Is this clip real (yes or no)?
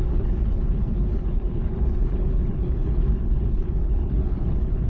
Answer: no